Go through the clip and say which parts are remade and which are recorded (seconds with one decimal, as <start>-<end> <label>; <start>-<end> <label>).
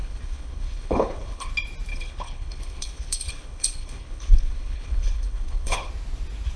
0.0-1.5 remade; 1.5-1.9 recorded; 1.9-5.9 remade; 5.9-6.6 recorded